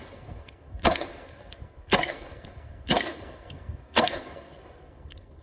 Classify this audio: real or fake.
fake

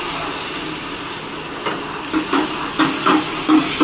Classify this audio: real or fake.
real